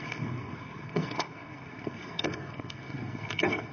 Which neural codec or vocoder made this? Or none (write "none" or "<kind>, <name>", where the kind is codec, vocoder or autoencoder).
codec, SNAC